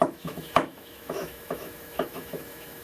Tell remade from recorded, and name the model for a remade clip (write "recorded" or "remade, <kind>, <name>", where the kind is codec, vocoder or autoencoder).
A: remade, autoencoder, DAC-VAE